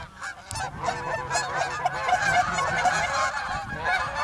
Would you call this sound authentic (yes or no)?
yes